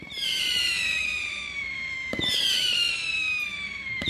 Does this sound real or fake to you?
fake